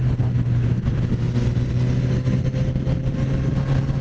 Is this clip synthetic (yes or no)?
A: no